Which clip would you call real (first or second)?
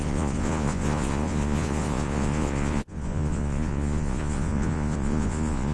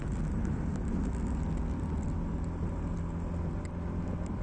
second